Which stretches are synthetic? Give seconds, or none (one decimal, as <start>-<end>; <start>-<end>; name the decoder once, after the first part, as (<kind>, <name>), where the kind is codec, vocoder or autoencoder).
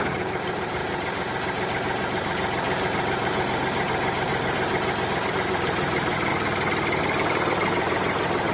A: 0.0-0.8 (vocoder, BigVGAN v2); 5.3-6.3; 7.0-8.5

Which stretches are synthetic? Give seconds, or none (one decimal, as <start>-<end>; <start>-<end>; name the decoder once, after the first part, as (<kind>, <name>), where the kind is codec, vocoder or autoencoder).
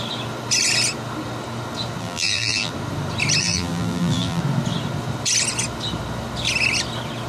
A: 2.0-2.7 (vocoder, BigVGAN v2); 3.4-4.4